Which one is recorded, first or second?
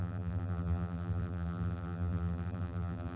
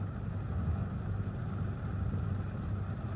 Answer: second